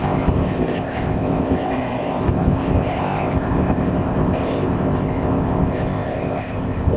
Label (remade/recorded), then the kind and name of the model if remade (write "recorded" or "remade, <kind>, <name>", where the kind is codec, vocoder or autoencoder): remade, codec, ZipCodec